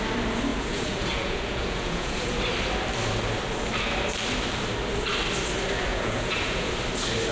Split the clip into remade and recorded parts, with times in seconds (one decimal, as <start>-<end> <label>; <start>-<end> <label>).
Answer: 0.0-0.5 recorded; 0.5-2.4 remade; 2.4-5.9 recorded; 5.9-6.7 remade; 6.7-7.3 recorded